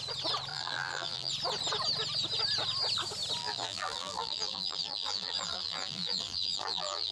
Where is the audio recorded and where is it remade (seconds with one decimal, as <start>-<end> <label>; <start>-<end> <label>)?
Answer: 0.0-0.5 recorded; 0.5-1.3 remade; 1.3-3.4 recorded; 3.4-7.1 remade